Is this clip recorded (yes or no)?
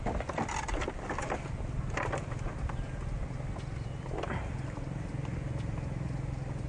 yes